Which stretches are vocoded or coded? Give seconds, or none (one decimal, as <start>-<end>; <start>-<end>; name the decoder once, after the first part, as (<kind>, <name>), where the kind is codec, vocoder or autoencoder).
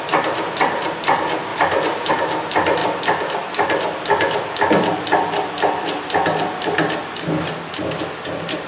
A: 1.5-2.1 (vocoder, BigVGAN v2)